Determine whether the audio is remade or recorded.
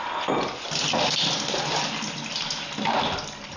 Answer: recorded